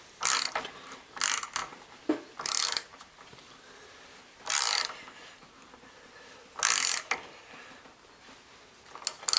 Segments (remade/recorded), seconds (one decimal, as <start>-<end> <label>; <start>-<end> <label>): 0.0-9.4 recorded